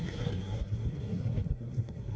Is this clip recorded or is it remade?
remade